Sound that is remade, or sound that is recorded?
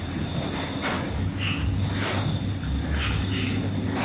recorded